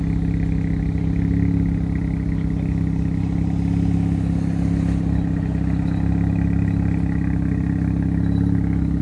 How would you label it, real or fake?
real